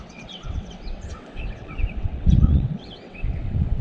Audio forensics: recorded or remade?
remade